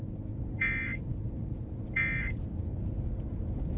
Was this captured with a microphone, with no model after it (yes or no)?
yes